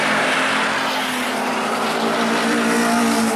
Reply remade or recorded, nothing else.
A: recorded